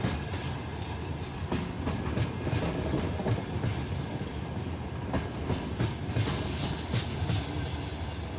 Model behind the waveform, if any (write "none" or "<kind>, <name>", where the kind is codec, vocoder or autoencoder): none